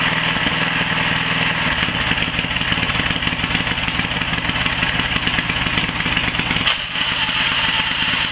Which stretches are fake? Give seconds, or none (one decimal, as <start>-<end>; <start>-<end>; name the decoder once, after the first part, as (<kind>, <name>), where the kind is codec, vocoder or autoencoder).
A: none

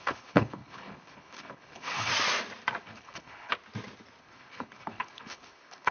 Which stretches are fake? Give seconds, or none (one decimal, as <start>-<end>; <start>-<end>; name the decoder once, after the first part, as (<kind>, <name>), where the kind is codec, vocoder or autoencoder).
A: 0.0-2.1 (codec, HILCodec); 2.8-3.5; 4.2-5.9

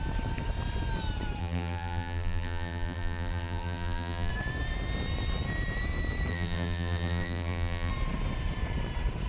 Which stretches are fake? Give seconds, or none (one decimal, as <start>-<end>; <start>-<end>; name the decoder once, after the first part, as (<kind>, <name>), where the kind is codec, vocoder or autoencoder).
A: 1.4-4.3 (vocoder, BigVGAN v2); 6.3-7.9

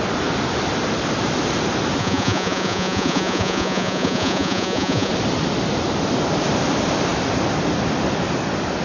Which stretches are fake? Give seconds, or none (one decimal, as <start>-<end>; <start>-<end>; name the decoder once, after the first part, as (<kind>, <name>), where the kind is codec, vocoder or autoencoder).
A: 2.0-5.1 (vocoder, Vocos)

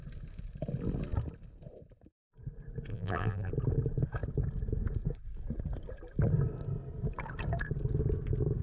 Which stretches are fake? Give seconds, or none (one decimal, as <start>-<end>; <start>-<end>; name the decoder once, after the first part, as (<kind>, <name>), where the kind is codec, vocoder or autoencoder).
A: 2.9-3.5 (vocoder, BigVGAN v2)

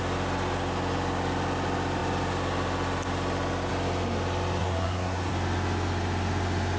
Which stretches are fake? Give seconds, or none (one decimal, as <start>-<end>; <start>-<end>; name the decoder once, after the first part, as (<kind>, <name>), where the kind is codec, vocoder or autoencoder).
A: 4.6-5.3 (codec, SNAC)